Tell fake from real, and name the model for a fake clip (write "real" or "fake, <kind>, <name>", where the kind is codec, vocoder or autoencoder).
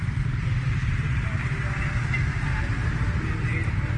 fake, vocoder, BigVGAN v2